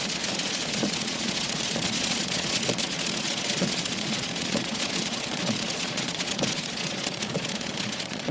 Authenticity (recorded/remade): remade